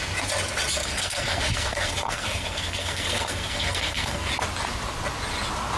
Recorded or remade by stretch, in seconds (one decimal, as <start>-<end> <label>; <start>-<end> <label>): 0.0-0.8 recorded; 0.8-4.3 remade; 4.3-5.8 recorded